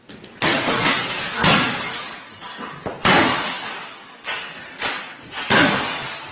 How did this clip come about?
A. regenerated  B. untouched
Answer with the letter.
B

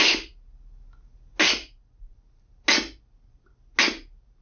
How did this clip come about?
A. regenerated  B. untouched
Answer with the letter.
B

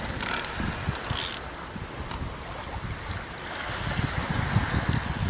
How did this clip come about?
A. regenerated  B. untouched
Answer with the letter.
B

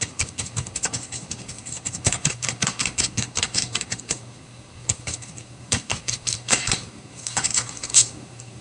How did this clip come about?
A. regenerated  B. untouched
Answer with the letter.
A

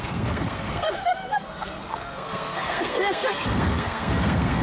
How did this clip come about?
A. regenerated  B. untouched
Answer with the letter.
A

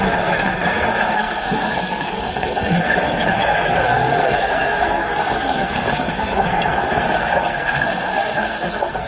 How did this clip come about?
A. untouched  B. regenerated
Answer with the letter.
B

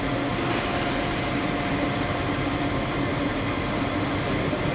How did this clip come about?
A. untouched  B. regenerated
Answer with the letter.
A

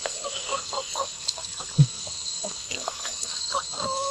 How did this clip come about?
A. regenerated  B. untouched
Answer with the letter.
A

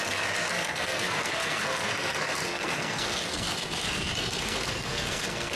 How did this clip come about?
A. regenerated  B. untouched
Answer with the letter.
A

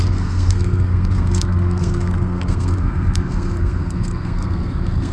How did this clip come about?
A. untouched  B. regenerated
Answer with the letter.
B